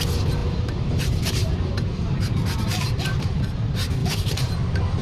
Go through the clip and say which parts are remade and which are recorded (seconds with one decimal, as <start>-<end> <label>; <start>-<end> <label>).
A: 0.0-0.4 recorded; 0.4-3.4 remade; 3.4-4.0 recorded; 4.0-4.5 remade; 4.5-5.0 recorded

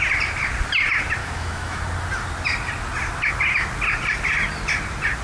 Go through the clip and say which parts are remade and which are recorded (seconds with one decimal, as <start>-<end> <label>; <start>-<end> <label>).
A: 0.0-1.2 recorded; 1.2-1.8 remade; 1.8-5.2 recorded

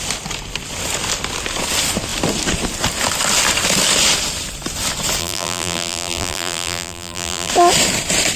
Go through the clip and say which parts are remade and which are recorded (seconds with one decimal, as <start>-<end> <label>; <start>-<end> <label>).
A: 0.0-5.2 recorded; 5.2-7.5 remade; 7.5-8.4 recorded